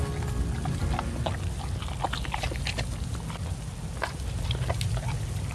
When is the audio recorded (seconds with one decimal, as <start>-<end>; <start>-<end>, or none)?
0.0-5.5